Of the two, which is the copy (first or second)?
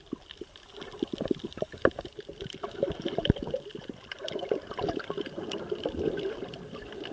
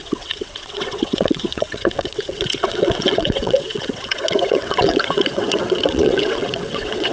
second